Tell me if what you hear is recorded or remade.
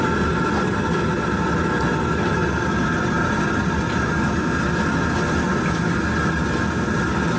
recorded